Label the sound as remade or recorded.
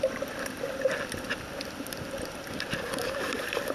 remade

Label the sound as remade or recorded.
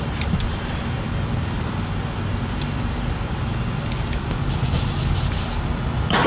remade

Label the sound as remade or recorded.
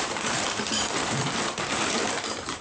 remade